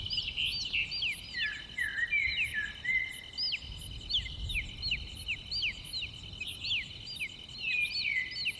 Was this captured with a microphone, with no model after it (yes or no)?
yes